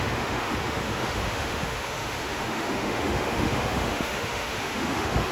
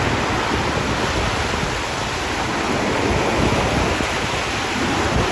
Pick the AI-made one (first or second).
first